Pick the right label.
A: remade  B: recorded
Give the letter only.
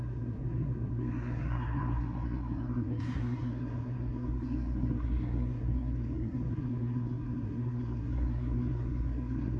A